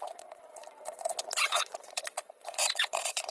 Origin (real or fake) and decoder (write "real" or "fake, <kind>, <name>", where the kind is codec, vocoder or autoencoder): fake, vocoder, Vocos